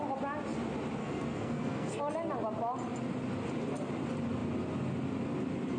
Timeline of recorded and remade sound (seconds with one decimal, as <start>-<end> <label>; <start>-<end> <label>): 0.0-1.0 recorded; 1.0-2.0 remade; 2.0-5.8 recorded